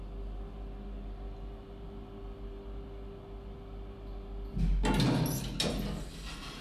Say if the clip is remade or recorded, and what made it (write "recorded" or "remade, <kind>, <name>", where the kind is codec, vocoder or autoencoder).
recorded